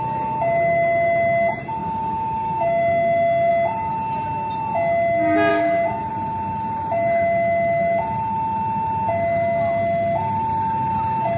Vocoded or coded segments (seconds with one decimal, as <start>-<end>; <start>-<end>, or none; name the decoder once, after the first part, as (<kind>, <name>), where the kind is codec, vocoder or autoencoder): 1.8-3.5 (codec, DAC); 5.5-6.1